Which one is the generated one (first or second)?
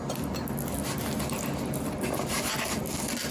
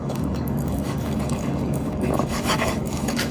second